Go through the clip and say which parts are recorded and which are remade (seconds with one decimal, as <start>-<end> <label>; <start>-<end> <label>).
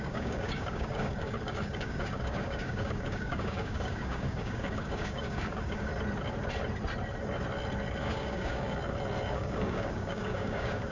0.0-5.9 remade; 5.9-8.0 recorded; 8.0-8.8 remade; 8.8-9.3 recorded; 9.3-10.9 remade